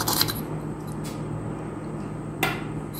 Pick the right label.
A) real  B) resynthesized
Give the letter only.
A